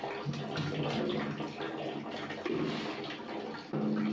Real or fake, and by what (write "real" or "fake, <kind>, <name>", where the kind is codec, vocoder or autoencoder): real